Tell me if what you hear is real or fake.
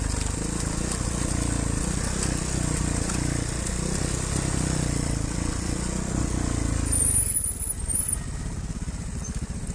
real